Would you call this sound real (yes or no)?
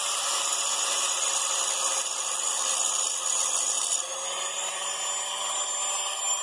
yes